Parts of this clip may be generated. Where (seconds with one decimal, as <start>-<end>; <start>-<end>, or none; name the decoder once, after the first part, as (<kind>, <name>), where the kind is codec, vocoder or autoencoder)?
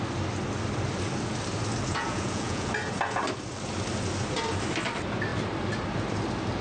1.9-2.7 (vocoder, Vocos)